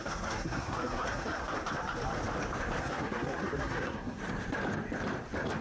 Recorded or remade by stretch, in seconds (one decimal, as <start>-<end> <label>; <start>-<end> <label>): 0.0-1.4 remade; 1.4-2.8 recorded; 2.8-4.2 remade; 4.2-5.6 recorded